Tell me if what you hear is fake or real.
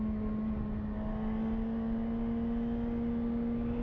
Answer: real